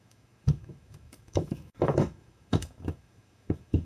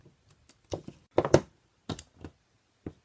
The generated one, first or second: first